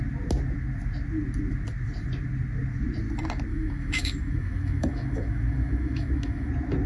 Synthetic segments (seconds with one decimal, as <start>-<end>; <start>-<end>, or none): 3.5-6.5

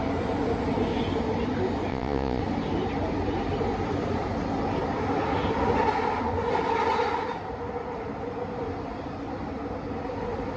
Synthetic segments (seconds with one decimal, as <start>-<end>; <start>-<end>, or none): 1.9-2.4

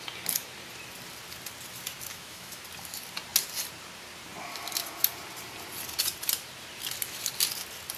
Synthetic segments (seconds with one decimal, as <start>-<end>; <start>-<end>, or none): 2.1-2.6

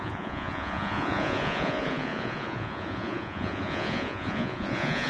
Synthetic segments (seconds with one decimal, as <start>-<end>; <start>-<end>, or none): 0.0-5.1

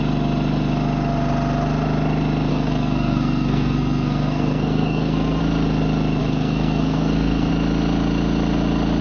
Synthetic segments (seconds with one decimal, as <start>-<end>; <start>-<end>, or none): 2.5-5.4; 6.2-7.5

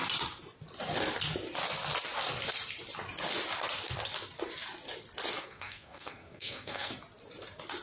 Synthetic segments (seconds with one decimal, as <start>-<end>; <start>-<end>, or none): 5.4-6.9

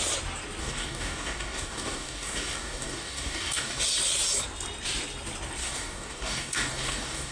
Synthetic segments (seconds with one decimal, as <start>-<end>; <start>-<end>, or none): 0.6-3.8; 5.6-7.3

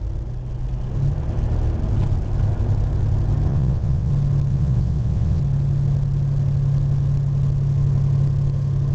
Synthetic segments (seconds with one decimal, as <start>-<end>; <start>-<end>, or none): 3.5-4.1; 4.5-5.4